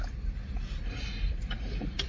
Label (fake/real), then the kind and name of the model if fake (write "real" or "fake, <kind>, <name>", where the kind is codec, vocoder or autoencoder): real